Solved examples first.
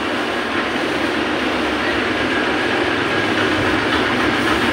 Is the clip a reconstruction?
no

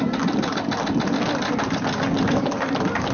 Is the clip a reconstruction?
no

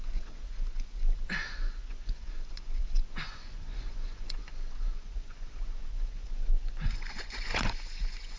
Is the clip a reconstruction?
yes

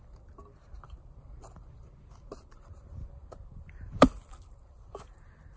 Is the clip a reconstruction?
no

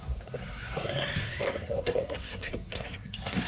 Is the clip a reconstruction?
yes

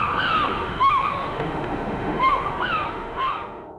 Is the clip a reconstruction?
yes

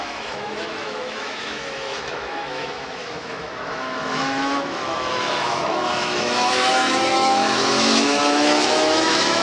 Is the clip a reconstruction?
yes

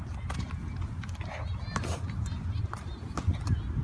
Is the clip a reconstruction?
no